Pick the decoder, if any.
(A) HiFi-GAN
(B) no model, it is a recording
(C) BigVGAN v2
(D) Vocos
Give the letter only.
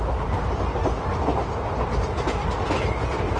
B